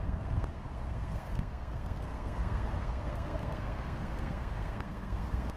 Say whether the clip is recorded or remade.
remade